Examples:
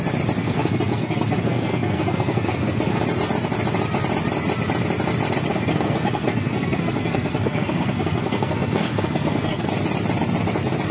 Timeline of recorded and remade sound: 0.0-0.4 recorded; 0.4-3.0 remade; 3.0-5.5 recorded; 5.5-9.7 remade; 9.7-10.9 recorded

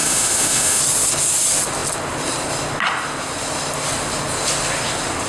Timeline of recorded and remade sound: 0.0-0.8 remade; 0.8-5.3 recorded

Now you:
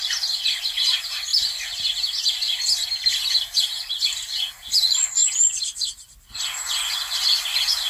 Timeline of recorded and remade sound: 0.0-7.9 recorded

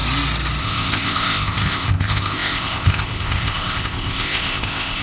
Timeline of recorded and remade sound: 0.0-0.6 recorded; 0.6-5.0 remade

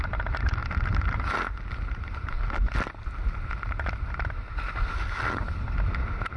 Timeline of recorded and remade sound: 0.0-6.4 recorded